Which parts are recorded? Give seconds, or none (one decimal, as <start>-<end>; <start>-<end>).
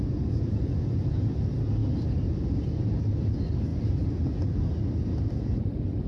0.0-6.1